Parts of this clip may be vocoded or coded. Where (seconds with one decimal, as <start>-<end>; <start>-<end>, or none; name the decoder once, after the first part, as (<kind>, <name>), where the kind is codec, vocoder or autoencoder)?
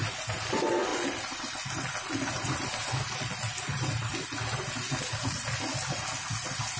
none